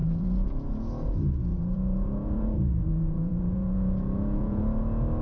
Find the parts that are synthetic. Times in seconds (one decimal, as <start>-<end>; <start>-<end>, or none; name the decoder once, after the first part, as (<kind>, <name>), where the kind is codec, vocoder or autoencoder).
0.0-0.7 (vocoder, Vocos); 1.5-4.6